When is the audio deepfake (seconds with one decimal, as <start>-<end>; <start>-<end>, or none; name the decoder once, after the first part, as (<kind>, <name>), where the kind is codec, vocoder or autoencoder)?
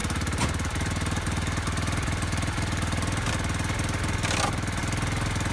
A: 0.0-3.3 (vocoder, BigVGAN v2)